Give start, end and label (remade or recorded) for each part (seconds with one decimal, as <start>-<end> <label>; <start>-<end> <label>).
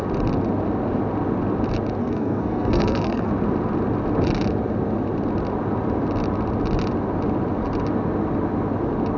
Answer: 0.0-2.0 recorded; 2.0-3.3 remade; 3.3-9.2 recorded